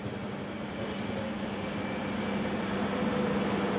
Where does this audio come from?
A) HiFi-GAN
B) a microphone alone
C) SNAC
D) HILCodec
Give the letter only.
B